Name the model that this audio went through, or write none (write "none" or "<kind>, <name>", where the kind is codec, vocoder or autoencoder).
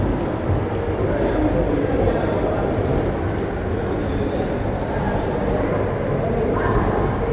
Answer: none